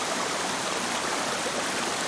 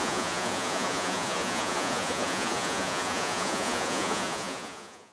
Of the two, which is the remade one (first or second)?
second